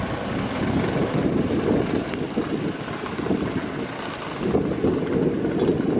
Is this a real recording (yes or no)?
yes